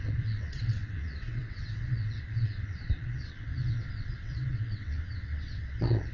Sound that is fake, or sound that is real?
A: fake